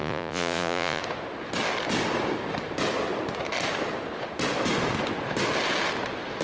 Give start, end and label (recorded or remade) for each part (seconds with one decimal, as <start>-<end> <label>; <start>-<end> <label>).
0.0-1.0 remade; 1.0-6.4 recorded